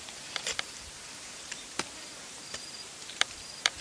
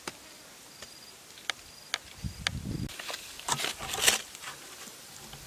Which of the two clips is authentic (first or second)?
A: second